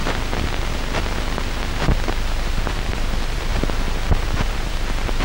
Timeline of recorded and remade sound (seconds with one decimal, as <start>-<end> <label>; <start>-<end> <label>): 0.0-2.7 recorded; 2.7-3.5 remade; 3.5-4.5 recorded; 4.5-5.2 remade